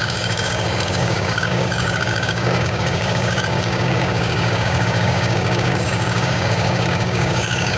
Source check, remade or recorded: remade